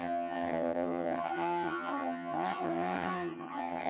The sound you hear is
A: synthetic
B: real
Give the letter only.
A